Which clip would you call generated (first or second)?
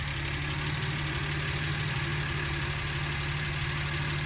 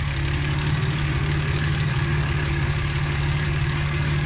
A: second